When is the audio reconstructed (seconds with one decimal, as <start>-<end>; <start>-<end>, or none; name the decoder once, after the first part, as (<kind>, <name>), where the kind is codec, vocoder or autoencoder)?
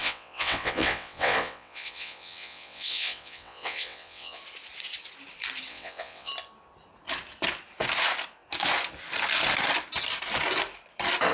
0.0-4.4 (vocoder, WaveNeXt); 5.7-6.3